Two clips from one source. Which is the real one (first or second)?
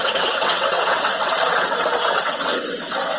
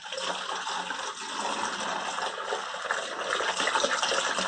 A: second